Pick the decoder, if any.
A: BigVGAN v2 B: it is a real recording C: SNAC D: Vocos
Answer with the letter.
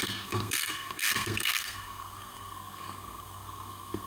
C